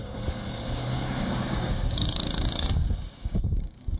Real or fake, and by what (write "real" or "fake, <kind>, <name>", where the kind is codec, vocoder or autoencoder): fake, codec, DAC